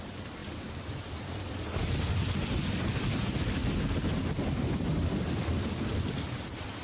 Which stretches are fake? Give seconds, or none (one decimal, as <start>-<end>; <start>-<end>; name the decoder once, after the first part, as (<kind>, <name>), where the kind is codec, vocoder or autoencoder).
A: none